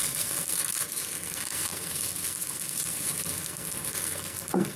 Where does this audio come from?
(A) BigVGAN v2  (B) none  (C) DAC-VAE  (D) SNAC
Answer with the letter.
D